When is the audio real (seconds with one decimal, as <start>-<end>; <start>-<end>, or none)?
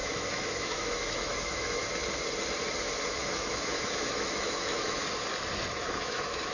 1.8-3.1; 5.0-5.7